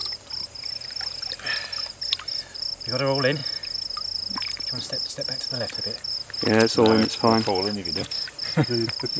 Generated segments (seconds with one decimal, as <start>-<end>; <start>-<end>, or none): none